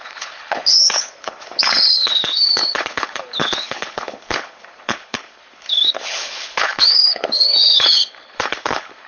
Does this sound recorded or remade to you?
remade